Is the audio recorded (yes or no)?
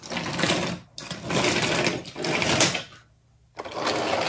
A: yes